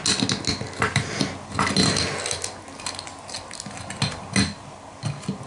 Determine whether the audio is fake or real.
real